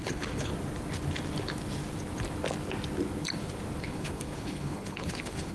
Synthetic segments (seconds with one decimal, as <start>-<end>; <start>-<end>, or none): 0.0-0.5; 3.8-5.5